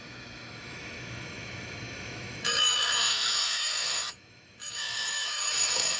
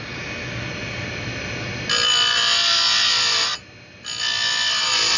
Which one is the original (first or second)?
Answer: second